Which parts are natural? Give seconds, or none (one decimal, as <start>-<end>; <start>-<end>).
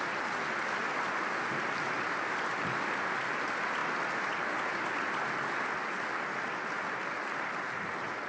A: 0.0-8.3